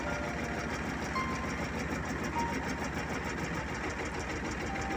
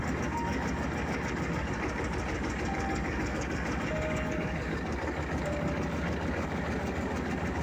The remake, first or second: second